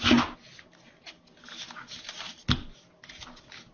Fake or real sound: real